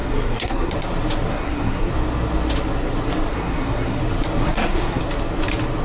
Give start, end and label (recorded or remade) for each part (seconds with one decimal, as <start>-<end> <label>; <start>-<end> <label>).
0.0-0.7 remade; 0.7-1.3 recorded; 1.3-1.9 remade; 1.9-3.3 recorded; 3.3-4.0 remade; 4.0-4.4 recorded; 4.4-5.0 remade; 5.0-5.8 recorded